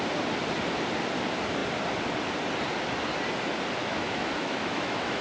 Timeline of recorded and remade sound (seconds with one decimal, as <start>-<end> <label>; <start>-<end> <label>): 0.0-3.8 recorded; 3.8-5.2 remade